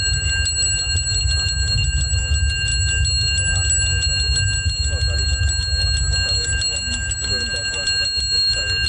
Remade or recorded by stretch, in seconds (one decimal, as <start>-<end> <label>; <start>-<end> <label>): 0.0-8.9 recorded